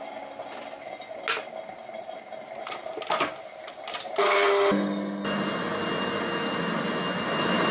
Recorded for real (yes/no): yes